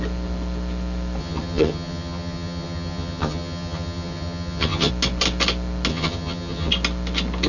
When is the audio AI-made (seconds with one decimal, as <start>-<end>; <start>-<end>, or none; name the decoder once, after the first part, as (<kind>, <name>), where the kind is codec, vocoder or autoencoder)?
1.2-4.9 (vocoder, HiFi-GAN); 5.9-6.7